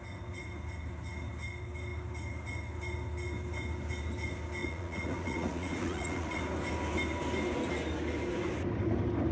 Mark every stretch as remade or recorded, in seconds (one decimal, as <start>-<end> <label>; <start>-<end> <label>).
0.0-4.6 recorded; 4.6-6.4 remade; 6.4-9.3 recorded